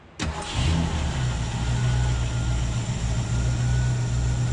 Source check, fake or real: real